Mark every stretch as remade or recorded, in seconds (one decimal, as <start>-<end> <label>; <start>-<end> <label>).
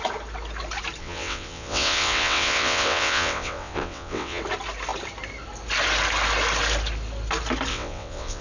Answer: 0.0-1.0 recorded; 1.0-4.4 remade; 4.4-7.7 recorded; 7.7-8.4 remade